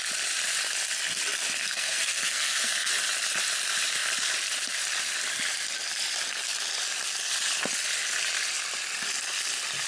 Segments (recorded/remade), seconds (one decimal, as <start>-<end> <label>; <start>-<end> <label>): 0.0-1.6 recorded; 1.6-2.9 remade; 2.9-9.9 recorded